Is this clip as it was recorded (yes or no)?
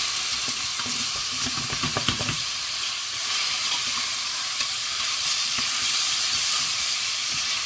no